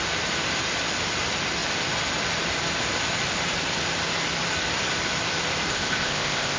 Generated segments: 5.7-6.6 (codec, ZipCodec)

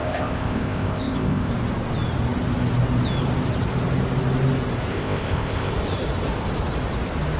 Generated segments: 0.0-1.5 (codec, ZipCodec); 4.9-5.7

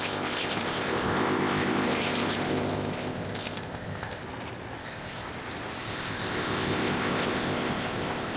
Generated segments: 0.0-4.2 (codec, ZipCodec); 4.8-5.3; 5.8-8.4

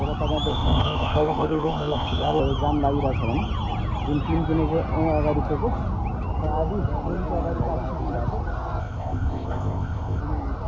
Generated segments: 0.5-2.4 (codec, ZipCodec); 8.8-10.2